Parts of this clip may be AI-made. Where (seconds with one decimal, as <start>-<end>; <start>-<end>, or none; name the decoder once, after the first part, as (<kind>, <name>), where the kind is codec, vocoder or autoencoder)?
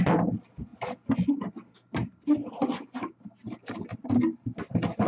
none